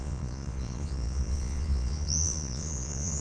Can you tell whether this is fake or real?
fake